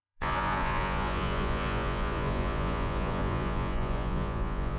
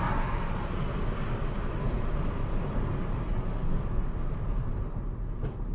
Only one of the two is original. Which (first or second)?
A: second